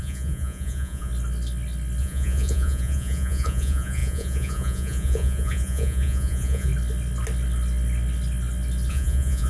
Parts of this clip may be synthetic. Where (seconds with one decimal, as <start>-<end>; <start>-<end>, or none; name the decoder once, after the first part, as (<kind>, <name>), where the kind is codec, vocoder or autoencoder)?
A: 0.0-1.1 (vocoder, Vocos); 2.0-6.7; 8.9-9.5